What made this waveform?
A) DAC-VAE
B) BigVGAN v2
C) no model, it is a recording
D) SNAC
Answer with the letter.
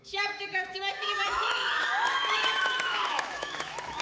A